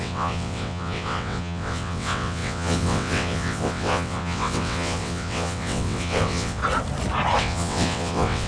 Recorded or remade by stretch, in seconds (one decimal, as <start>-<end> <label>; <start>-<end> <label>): 0.0-6.6 remade; 6.6-7.4 recorded; 7.4-8.5 remade